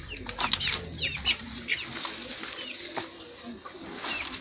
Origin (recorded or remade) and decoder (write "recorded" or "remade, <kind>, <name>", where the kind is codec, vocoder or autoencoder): recorded